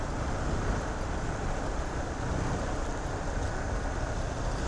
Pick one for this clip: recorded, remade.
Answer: recorded